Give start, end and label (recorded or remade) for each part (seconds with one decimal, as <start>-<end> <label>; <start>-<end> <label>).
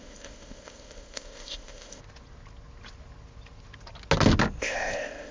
0.0-2.0 remade; 2.0-4.6 recorded; 4.6-5.3 remade